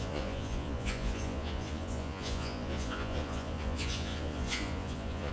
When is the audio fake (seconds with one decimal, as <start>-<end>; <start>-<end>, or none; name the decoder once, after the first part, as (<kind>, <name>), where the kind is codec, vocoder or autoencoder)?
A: 0.0-5.3 (vocoder, Vocos)